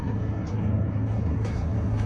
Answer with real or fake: fake